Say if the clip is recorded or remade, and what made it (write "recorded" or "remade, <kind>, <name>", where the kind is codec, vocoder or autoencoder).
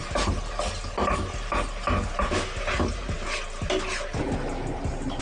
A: recorded